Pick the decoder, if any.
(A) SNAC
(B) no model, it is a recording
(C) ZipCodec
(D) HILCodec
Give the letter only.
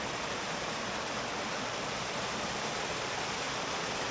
B